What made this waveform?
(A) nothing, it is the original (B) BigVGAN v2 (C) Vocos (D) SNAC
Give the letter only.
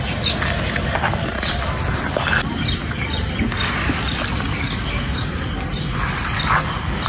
A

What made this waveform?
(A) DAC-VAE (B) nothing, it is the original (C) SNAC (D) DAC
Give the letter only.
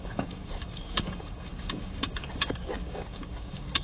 D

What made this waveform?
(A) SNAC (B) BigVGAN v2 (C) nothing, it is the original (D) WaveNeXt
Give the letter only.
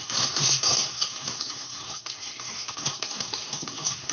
A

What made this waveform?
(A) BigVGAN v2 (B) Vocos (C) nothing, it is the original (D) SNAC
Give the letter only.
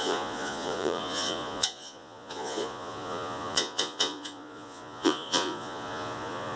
B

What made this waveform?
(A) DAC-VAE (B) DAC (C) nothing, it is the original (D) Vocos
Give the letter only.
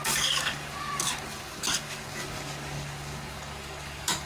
B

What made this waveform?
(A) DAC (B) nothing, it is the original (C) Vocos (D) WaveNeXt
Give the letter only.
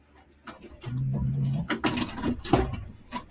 B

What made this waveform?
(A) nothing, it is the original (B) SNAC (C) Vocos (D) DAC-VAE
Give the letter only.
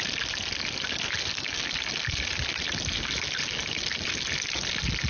A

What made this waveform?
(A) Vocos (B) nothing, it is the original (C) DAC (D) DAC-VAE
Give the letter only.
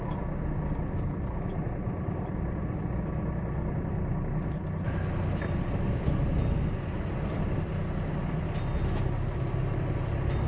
B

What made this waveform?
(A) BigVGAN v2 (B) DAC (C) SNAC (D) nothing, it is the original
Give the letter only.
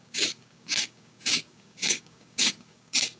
B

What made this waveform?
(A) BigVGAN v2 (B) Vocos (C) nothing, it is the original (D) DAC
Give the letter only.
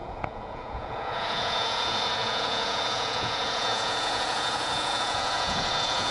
B